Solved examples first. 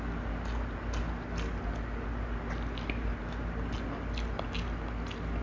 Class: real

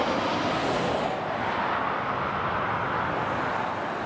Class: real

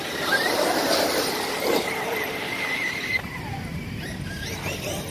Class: real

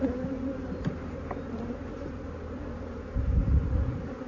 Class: fake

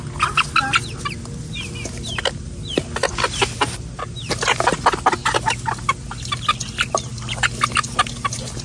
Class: real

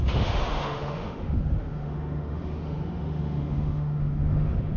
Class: fake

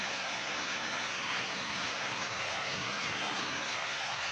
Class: fake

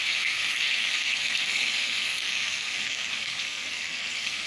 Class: fake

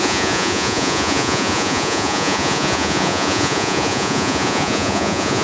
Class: fake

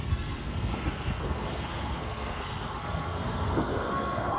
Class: fake